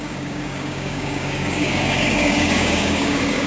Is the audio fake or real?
fake